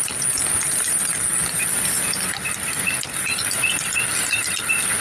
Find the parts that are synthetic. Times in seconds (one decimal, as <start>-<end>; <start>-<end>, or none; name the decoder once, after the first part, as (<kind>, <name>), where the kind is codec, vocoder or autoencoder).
none